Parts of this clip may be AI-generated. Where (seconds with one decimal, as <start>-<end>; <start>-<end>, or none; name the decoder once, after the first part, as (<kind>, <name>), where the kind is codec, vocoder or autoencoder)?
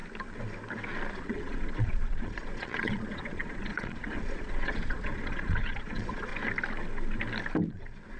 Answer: 1.1-6.3 (vocoder, Vocos); 7.7-8.2